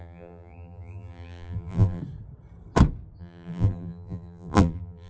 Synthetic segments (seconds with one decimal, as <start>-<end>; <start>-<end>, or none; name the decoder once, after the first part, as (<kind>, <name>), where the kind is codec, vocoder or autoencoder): 0.0-2.0 (vocoder, BigVGAN v2); 3.2-5.1